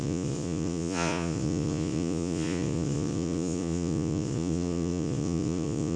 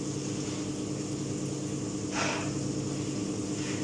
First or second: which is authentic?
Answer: second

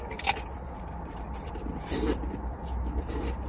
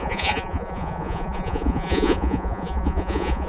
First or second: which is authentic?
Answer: first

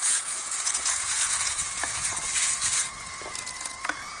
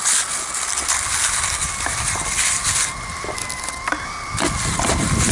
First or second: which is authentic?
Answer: second